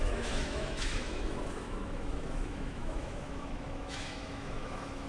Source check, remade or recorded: remade